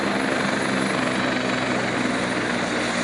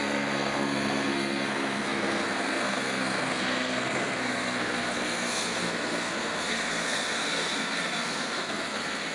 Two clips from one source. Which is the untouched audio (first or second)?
first